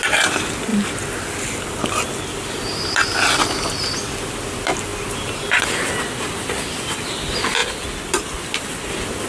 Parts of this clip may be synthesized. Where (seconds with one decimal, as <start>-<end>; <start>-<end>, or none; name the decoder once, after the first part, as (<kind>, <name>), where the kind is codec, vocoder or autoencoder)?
none